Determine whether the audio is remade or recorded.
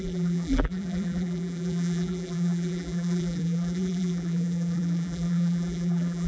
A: remade